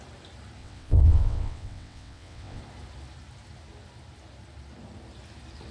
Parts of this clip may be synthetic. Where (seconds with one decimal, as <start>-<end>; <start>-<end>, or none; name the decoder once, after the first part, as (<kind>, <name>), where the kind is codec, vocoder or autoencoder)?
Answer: 0.6-2.6 (vocoder, WaveNeXt)

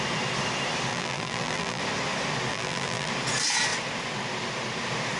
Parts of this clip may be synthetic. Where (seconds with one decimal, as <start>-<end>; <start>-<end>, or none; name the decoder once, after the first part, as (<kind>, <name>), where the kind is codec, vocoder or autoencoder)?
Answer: 0.9-1.8 (vocoder, BigVGAN v2); 2.5-3.1

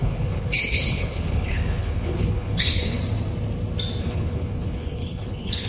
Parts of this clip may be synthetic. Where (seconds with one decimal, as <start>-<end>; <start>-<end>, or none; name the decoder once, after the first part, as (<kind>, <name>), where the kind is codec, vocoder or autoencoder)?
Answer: 0.0-3.0 (codec, HILCodec); 4.0-5.7

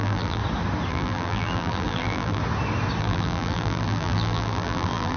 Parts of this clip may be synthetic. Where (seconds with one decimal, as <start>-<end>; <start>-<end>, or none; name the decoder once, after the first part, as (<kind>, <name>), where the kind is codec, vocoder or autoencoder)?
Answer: 0.0-0.4 (vocoder, BigVGAN v2); 0.9-2.4; 3.0-5.2

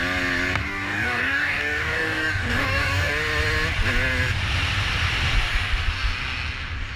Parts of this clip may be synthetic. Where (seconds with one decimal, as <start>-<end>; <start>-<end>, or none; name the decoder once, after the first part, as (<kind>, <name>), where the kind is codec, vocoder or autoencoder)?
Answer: 0.6-3.1 (codec, DAC)